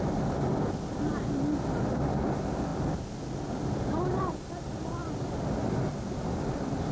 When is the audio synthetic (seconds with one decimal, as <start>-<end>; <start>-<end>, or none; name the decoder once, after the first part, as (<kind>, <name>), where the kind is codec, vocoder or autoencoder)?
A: none